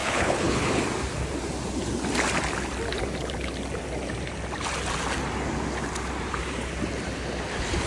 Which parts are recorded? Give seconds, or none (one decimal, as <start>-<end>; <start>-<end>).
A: 0.8-7.9